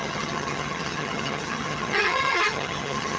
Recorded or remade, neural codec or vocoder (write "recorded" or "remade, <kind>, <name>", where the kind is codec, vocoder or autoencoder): remade, vocoder, HiFi-GAN